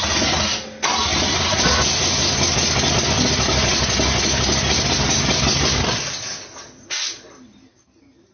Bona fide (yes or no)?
yes